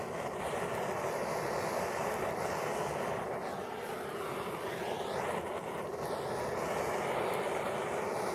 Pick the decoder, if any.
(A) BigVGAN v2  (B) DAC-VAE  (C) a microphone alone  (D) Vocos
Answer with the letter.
C